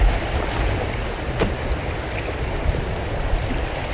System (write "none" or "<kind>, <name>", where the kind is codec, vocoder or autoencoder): none